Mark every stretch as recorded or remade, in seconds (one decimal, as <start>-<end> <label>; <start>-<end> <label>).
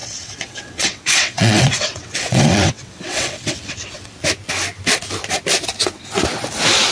0.0-4.1 remade; 4.1-6.9 recorded